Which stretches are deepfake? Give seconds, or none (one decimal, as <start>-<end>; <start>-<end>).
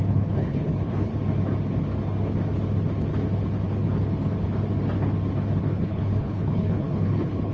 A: 0.0-1.1; 5.6-7.5